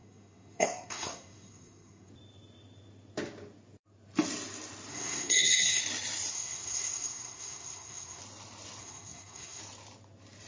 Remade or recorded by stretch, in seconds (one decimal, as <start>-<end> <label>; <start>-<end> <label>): 0.0-2.1 remade; 2.1-4.9 recorded; 4.9-5.8 remade; 5.8-6.3 recorded; 6.3-8.2 remade; 8.2-8.8 recorded; 8.8-9.6 remade; 9.6-10.5 recorded